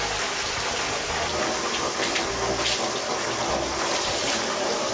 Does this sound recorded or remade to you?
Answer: recorded